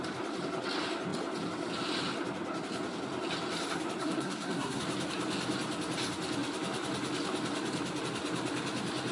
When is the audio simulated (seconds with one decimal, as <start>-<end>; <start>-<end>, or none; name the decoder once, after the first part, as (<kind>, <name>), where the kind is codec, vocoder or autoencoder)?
4.0-4.8 (codec, SNAC)